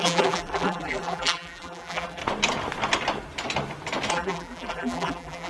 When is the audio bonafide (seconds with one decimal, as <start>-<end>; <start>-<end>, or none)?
2.2-4.1